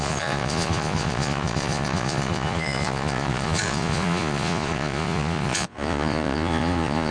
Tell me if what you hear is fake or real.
fake